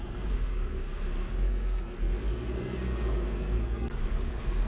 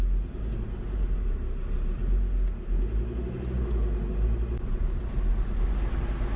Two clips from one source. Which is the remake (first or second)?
first